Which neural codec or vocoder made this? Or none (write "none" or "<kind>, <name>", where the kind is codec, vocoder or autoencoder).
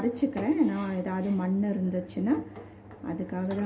none